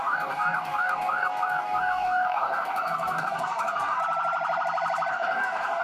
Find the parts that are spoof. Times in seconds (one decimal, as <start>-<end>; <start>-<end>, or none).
0.0-4.0; 5.1-5.8